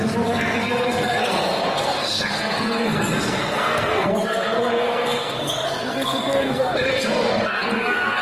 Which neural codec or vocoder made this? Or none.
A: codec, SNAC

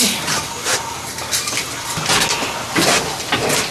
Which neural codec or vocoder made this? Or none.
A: none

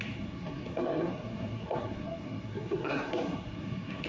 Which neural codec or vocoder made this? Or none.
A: codec, SNAC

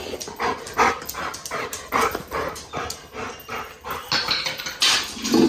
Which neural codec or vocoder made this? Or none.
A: none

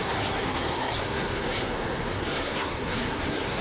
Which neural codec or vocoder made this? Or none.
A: codec, SNAC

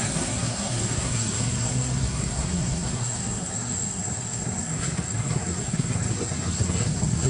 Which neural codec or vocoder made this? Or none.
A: codec, SNAC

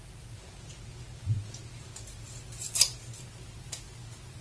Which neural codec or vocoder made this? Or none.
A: none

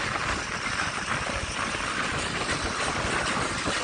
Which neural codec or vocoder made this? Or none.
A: none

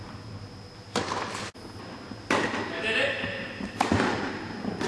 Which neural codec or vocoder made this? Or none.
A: none